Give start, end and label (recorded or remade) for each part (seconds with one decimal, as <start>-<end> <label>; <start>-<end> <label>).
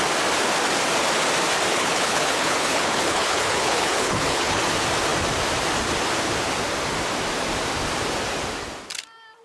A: 0.0-1.7 recorded; 1.7-4.6 remade; 4.6-9.4 recorded